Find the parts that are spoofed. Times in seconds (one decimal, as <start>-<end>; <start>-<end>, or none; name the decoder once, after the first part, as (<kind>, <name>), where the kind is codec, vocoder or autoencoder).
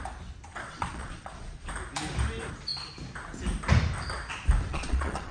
0.5-1.7 (vocoder, Vocos); 4.7-5.3